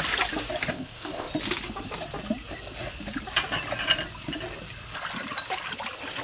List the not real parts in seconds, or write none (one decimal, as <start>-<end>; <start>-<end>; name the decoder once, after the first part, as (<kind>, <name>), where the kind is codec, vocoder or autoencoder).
0.7-1.3 (codec, ZipCodec)